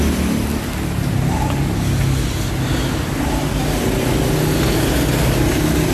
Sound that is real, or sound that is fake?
real